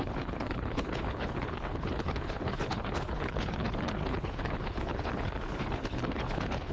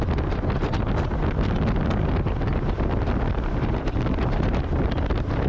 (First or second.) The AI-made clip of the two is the first